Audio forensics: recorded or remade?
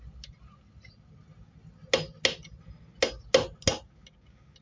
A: recorded